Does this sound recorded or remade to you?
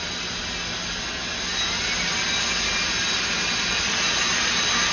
recorded